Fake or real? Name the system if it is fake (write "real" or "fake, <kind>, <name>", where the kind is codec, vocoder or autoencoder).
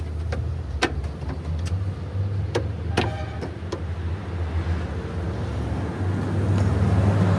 real